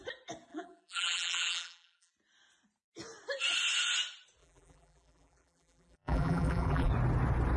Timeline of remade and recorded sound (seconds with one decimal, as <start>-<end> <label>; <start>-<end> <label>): 0.0-0.5 recorded; 0.5-2.1 remade; 2.1-4.4 recorded; 4.4-6.9 remade; 6.9-7.6 recorded